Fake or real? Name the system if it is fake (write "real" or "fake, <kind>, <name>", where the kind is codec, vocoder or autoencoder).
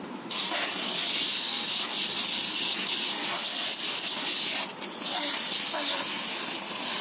real